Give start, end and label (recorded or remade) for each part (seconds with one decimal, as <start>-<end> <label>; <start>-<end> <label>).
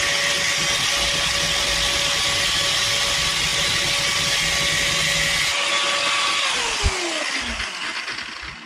0.0-8.7 recorded